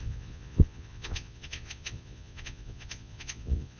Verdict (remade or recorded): remade